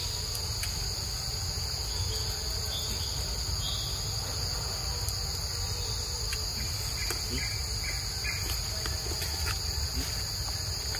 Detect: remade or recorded recorded